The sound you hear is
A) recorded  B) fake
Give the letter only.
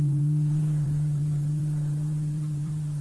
B